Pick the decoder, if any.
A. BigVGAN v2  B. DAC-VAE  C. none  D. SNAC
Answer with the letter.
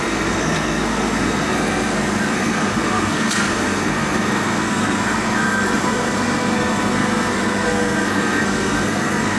D